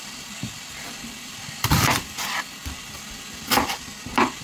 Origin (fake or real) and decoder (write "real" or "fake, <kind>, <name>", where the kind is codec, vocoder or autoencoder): fake, vocoder, BigVGAN v2